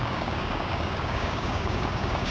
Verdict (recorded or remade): remade